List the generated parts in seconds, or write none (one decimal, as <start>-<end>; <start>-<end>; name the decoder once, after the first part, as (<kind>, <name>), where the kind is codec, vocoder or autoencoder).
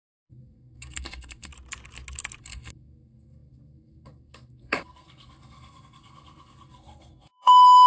0.0-1.5 (codec, SNAC); 2.4-7.9